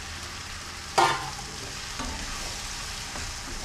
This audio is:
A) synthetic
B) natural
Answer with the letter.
B